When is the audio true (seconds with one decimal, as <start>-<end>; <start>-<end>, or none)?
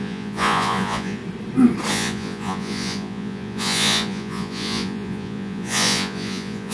1.2-1.9